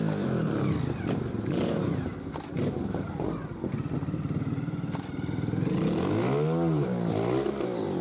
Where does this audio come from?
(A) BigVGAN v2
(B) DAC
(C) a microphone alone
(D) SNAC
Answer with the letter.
C